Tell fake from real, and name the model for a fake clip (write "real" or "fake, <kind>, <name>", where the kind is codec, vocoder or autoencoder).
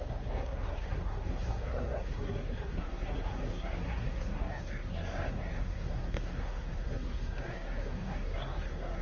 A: fake, codec, SNAC